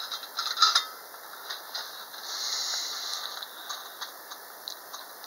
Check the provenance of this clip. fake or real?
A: real